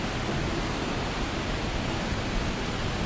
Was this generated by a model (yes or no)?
no